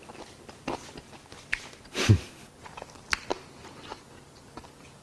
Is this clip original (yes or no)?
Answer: yes